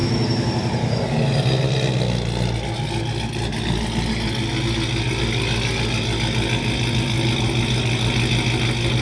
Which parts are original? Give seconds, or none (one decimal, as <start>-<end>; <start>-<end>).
0.0-9.0